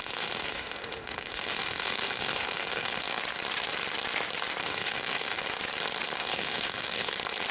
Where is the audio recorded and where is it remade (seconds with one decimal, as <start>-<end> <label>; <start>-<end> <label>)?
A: 0.0-3.2 remade; 3.2-4.6 recorded; 4.6-5.4 remade; 5.4-6.2 recorded; 6.2-7.1 remade; 7.1-7.5 recorded